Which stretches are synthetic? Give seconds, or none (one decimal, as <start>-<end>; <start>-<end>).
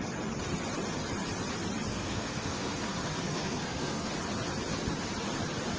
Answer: 1.9-4.1